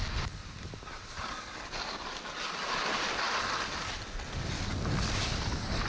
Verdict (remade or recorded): recorded